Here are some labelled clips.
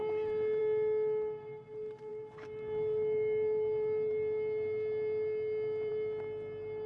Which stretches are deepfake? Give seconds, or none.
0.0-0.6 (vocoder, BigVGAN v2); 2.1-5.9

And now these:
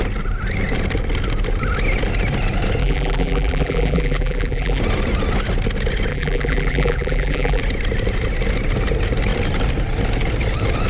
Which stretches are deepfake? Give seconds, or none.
2.8-4.8 (vocoder, BigVGAN v2); 6.1-7.6

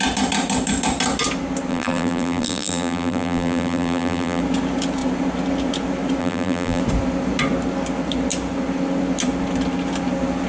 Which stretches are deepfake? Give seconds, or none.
1.7-4.4 (vocoder, BigVGAN v2); 6.2-6.8

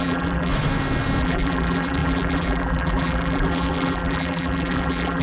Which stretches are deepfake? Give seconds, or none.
0.0-0.5 (vocoder, BigVGAN v2); 1.2-5.2

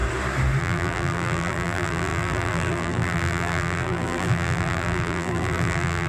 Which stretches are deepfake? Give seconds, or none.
0.6-6.1 (vocoder, BigVGAN v2)